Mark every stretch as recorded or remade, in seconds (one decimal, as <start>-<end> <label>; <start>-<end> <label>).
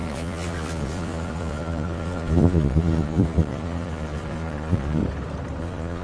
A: 0.0-5.0 remade; 5.0-5.6 recorded; 5.6-6.0 remade